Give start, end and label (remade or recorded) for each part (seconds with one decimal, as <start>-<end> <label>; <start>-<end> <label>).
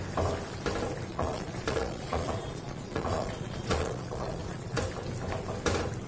0.0-1.1 recorded; 1.1-4.8 remade; 4.8-6.1 recorded